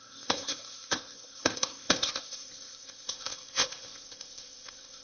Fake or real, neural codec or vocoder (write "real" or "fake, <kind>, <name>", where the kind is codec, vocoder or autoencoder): fake, codec, ZipCodec